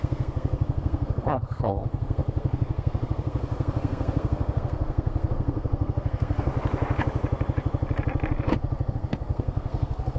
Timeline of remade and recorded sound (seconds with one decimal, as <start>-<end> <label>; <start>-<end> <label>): 0.0-6.5 remade; 6.5-8.9 recorded; 8.9-10.2 remade